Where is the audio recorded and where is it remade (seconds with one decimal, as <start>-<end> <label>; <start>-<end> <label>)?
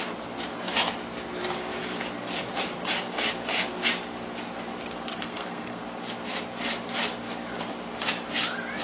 0.0-5.2 recorded; 5.2-5.8 remade; 5.8-8.8 recorded